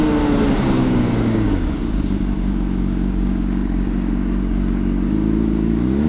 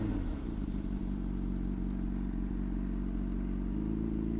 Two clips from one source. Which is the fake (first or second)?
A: first